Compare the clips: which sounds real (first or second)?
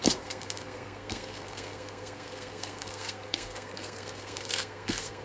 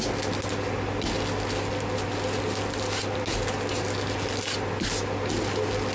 second